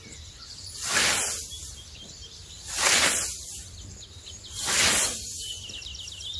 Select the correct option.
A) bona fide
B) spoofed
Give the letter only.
A